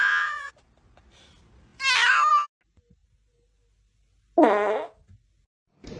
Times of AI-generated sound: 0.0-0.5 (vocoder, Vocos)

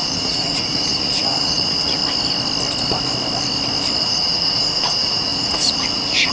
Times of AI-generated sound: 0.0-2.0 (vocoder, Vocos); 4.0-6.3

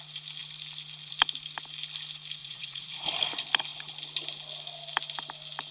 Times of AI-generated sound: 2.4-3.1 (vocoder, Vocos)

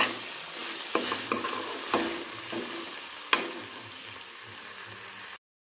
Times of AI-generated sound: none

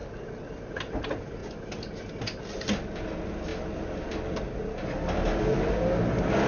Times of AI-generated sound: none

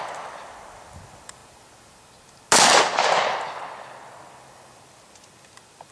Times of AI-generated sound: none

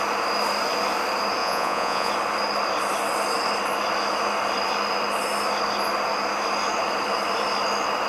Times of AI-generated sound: 1.4-2.1 (vocoder, Vocos)

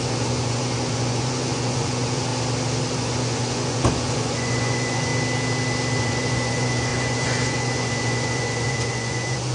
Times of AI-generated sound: 0.0-2.3 (vocoder, Vocos); 3.0-5.1; 6.0-9.5